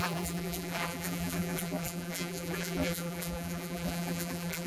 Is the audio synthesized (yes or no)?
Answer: yes